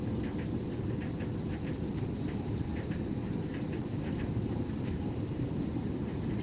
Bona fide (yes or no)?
yes